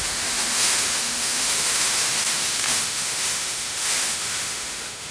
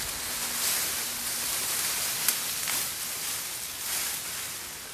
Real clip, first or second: second